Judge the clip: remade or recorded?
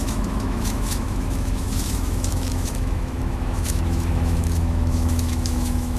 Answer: remade